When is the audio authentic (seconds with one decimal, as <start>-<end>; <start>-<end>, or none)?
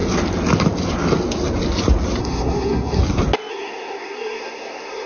0.0-2.2; 3.0-3.5